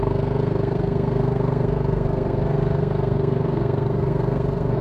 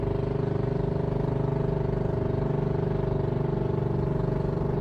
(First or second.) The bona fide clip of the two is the second